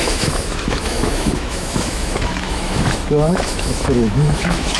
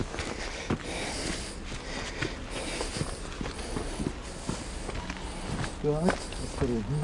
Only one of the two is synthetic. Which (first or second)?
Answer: first